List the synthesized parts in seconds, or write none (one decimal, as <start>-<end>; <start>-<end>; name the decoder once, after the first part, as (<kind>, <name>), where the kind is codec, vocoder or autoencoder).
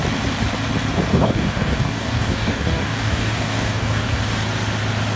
1.1-4.2 (codec, DAC)